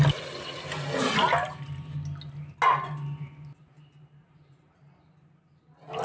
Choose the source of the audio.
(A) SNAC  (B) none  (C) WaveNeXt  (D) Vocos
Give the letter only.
B